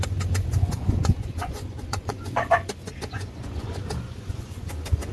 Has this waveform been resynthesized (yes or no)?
yes